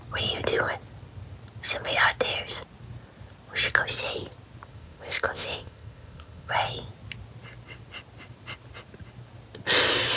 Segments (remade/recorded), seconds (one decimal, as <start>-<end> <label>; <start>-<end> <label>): 0.0-4.7 recorded; 4.7-6.5 remade; 6.5-10.2 recorded